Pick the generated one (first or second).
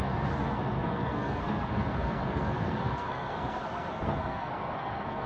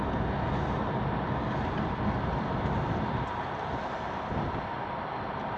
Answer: first